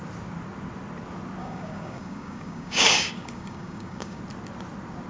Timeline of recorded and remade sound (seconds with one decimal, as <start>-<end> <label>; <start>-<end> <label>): 0.0-1.4 recorded; 1.4-4.2 remade; 4.2-5.1 recorded